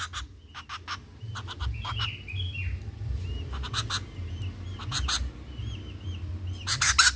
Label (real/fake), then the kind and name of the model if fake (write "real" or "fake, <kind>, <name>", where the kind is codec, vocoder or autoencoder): real